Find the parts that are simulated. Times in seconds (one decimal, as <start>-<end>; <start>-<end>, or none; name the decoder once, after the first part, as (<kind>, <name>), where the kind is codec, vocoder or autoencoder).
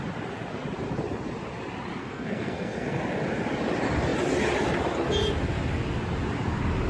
2.0-3.0 (codec, SNAC)